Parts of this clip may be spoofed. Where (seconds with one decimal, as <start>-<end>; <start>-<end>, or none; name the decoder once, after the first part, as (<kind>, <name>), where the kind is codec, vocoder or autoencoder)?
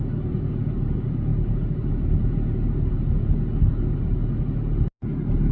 1.3-1.9 (vocoder, BigVGAN v2)